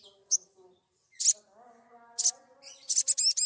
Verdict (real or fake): real